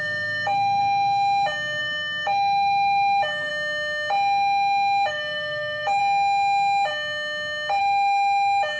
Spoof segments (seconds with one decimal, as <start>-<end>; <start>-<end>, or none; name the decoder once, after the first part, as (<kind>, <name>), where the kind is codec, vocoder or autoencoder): 0.0-0.8 (autoencoder, DAC-VAE); 1.8-3.5; 5.1-6.0; 7.8-8.8